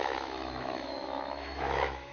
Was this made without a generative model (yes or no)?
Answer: no